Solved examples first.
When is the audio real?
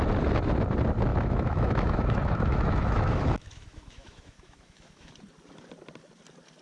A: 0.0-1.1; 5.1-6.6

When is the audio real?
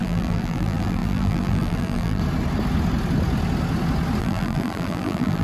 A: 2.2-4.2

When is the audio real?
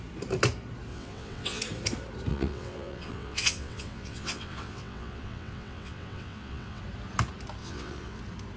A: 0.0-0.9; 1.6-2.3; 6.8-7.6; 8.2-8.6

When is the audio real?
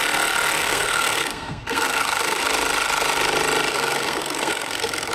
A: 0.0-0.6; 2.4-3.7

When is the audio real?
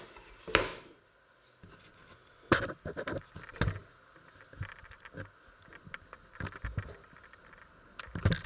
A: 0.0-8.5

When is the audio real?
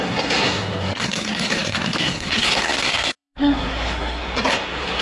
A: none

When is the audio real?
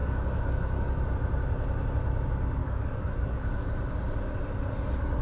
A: 1.0-2.6; 3.7-5.2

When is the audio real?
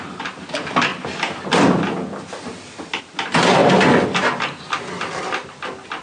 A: 0.0-6.0